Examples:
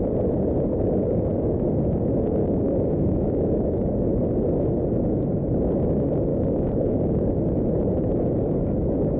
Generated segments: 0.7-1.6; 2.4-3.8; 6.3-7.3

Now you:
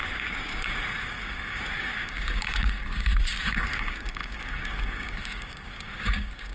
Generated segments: 0.0-6.5

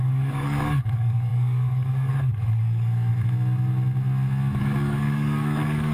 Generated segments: 0.0-3.1; 4.6-5.9

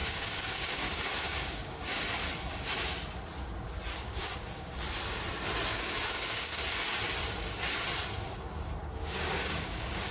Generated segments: 0.0-1.8; 3.9-4.8; 5.7-6.6; 8.8-10.1

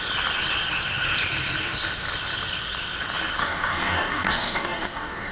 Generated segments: 3.4-5.3

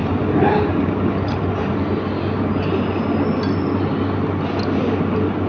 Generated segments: none